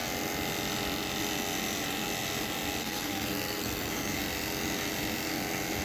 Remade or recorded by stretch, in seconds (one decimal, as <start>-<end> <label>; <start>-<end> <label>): 0.0-2.8 recorded; 2.8-4.2 remade; 4.2-5.8 recorded